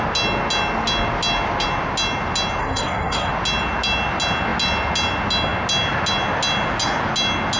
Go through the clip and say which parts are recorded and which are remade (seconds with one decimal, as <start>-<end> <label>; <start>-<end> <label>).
0.0-2.6 recorded; 2.6-3.3 remade; 3.3-7.6 recorded